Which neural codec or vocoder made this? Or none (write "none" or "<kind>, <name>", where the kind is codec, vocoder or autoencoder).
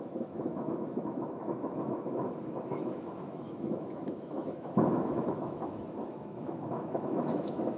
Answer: autoencoder, DAC-VAE